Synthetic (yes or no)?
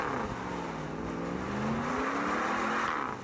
no